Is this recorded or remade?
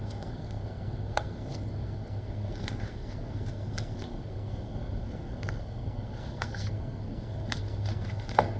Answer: remade